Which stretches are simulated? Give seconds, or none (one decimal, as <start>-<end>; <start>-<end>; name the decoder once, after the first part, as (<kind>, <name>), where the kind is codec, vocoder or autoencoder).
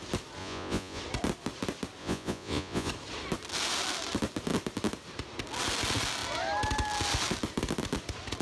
0.4-1.0 (vocoder, Vocos); 2.0-2.9